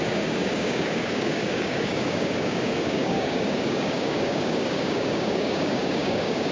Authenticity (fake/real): fake